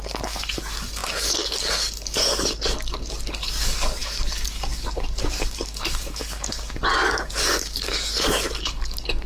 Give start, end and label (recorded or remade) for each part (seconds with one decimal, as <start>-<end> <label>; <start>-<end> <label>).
0.0-9.3 remade